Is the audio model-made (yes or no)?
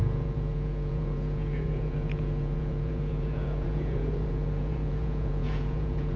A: yes